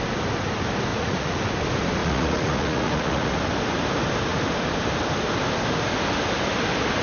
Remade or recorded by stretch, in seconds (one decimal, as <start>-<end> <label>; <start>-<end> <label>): 0.0-0.9 recorded; 0.9-1.4 remade; 1.4-2.0 recorded; 2.0-3.3 remade; 3.3-7.0 recorded